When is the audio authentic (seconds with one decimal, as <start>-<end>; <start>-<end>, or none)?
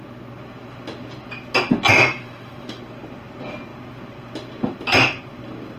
0.0-1.9; 2.8-5.8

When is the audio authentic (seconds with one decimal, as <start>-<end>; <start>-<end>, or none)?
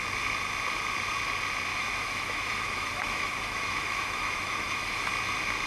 0.0-1.7; 5.1-5.7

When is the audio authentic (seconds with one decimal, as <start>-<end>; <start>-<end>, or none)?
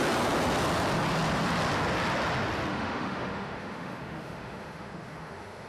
0.0-2.7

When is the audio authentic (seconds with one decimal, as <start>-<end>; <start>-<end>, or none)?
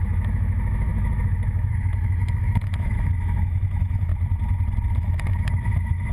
4.1-5.0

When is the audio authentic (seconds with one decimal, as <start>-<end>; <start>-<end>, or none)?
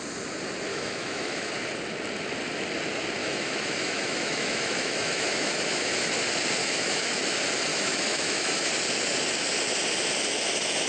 0.0-0.7; 1.5-3.2; 6.1-6.6; 7.2-7.7; 8.7-10.9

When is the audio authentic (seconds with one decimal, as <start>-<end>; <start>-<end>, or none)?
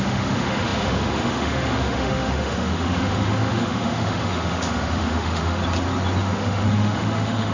5.6-6.2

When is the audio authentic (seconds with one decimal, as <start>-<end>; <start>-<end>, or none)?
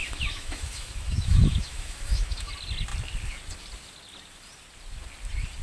2.5-5.6